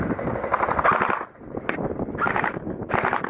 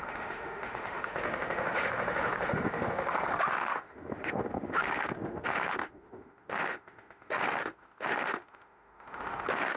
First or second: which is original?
first